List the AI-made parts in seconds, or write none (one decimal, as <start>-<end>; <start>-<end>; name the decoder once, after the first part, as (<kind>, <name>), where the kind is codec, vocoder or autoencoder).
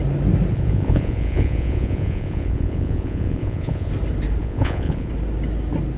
0.5-3.9 (vocoder, Vocos); 4.4-5.1